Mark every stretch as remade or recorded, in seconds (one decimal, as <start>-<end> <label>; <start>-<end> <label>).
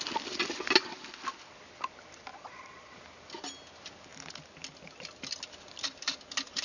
0.0-2.3 recorded; 2.3-2.9 remade; 2.9-6.6 recorded